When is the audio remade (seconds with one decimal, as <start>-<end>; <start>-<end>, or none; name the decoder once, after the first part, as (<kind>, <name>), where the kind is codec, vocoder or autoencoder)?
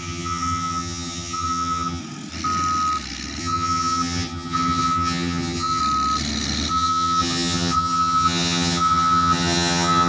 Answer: 0.0-2.0 (vocoder, HiFi-GAN); 3.4-5.8; 6.7-10.1